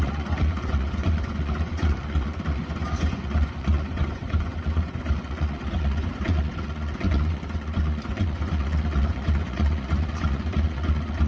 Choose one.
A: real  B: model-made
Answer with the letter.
B